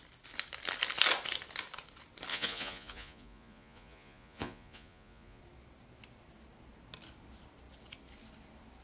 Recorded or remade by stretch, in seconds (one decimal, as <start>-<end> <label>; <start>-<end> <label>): 0.0-2.3 recorded; 2.3-5.4 remade; 5.4-8.8 recorded

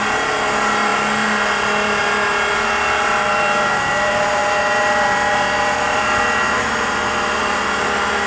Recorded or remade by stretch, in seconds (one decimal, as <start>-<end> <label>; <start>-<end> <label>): 0.0-8.3 recorded

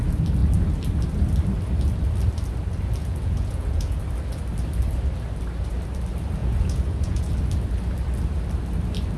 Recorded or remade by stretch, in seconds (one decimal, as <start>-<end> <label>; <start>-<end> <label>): 0.0-3.0 recorded; 3.0-4.0 remade; 4.0-6.4 recorded; 6.4-7.3 remade; 7.3-9.2 recorded

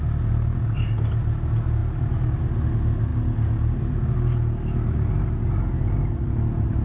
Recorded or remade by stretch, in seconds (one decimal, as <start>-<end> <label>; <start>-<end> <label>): 0.0-6.8 recorded